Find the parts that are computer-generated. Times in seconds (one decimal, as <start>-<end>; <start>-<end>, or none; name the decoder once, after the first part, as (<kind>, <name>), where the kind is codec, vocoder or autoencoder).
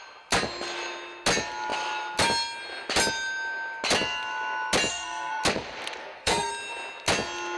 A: 4.9-5.4 (codec, SNAC); 6.0-6.5